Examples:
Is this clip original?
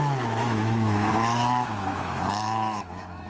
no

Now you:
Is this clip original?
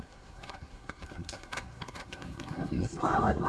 no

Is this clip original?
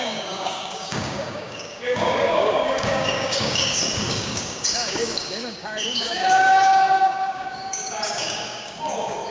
no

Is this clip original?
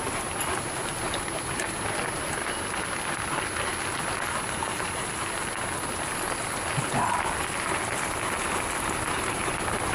yes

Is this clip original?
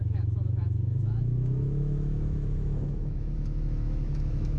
no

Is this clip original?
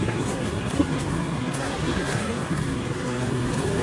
no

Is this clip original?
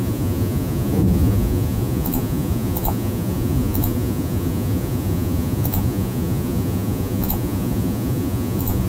no